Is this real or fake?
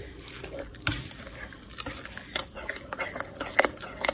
real